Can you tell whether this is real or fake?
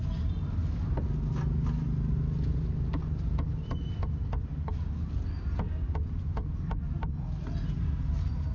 real